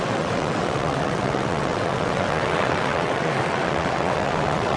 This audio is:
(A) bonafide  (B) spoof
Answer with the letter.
B